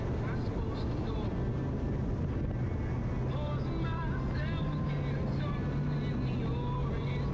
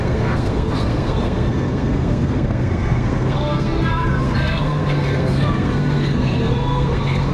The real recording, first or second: first